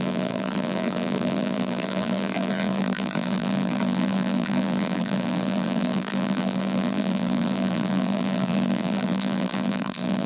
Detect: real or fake fake